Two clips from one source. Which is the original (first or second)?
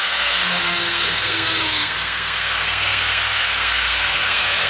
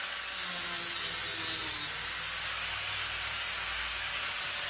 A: second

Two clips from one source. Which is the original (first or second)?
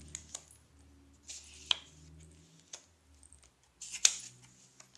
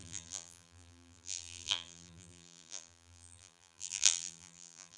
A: first